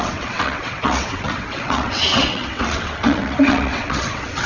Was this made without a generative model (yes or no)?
no